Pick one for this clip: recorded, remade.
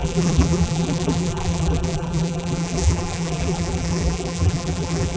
remade